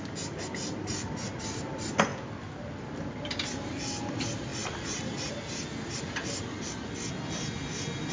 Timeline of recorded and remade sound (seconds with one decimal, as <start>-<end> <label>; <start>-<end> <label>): 0.0-8.1 recorded